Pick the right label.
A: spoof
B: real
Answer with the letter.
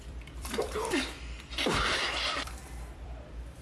A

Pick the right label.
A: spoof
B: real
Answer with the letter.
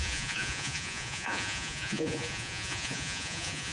A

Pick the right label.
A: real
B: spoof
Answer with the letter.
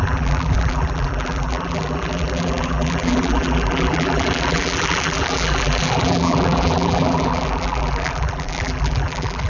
B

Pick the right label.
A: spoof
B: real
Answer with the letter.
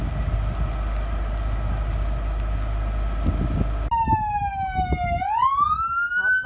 B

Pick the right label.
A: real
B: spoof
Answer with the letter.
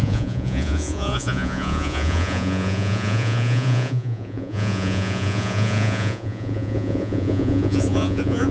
B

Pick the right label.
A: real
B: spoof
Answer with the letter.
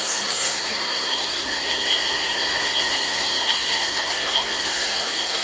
B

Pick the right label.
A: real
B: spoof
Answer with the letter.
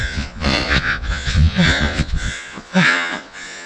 B